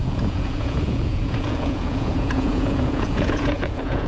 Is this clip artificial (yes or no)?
yes